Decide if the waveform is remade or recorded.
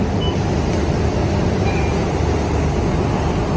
recorded